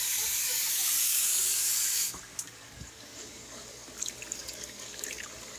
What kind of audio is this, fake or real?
fake